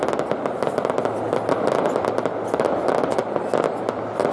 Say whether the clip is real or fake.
real